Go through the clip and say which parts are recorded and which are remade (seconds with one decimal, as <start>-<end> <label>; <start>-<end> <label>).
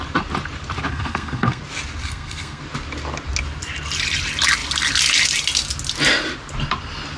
0.0-0.9 recorded; 0.9-1.6 remade; 1.6-2.0 recorded; 2.0-2.6 remade; 2.6-7.2 recorded